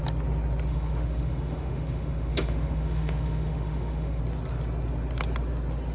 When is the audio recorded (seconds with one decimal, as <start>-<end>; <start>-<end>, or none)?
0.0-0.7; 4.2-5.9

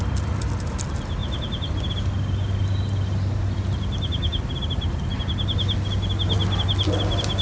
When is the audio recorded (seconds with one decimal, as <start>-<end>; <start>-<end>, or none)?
0.0-7.4

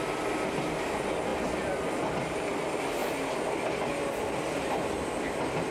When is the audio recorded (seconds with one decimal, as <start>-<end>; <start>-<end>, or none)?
0.0-5.7

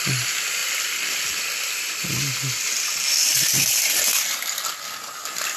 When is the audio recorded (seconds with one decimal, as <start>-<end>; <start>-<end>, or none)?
0.0-5.6

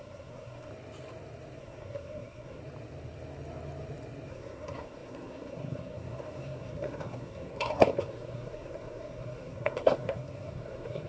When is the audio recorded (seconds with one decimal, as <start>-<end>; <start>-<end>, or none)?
0.7-1.6; 2.6-4.3

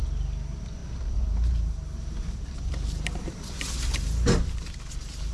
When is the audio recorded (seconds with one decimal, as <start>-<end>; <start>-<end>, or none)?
0.0-0.8; 3.4-5.3

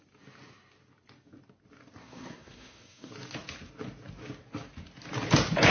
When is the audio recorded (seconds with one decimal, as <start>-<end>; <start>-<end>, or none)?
0.0-2.0; 3.1-5.7